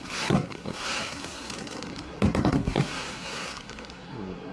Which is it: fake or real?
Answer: fake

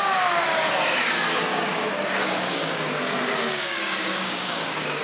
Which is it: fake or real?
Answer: fake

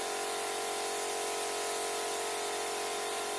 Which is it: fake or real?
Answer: real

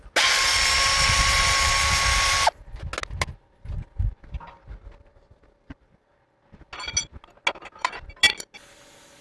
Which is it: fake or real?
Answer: real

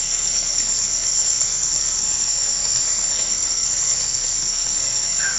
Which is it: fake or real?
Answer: fake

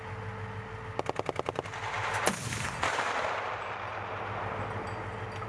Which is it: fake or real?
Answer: real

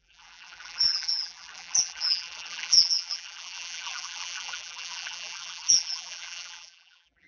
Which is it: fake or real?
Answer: fake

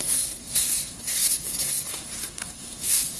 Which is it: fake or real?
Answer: fake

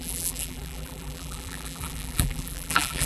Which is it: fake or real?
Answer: fake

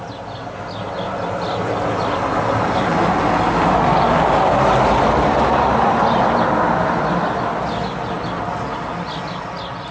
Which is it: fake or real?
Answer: real